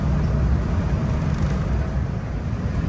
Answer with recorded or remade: recorded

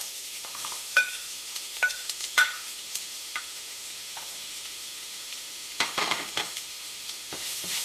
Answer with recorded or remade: remade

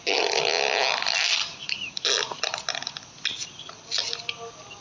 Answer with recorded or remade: recorded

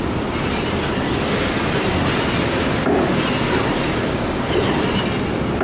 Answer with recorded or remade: recorded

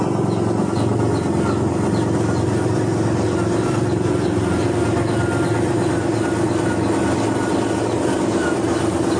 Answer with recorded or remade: recorded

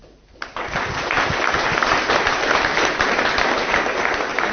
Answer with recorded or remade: recorded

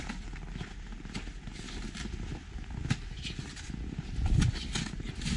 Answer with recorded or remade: recorded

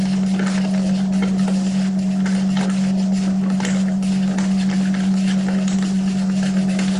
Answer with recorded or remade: recorded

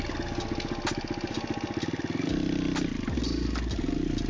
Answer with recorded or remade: recorded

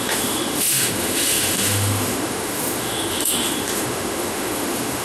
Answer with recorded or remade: remade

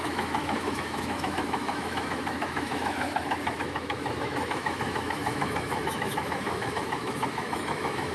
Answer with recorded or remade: remade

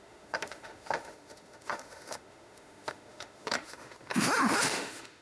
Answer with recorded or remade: remade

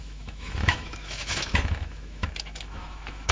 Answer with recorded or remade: remade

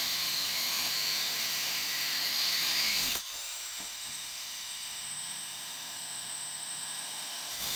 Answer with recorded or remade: remade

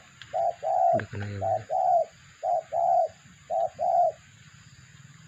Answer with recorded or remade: recorded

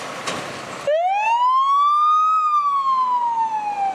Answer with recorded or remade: recorded